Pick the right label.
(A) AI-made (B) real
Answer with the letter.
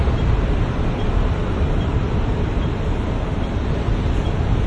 A